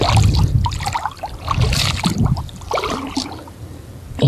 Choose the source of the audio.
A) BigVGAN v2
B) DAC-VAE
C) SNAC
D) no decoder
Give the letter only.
D